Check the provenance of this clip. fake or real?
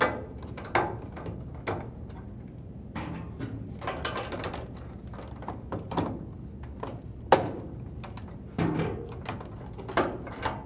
real